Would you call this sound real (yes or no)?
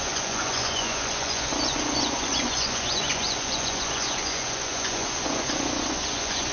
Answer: no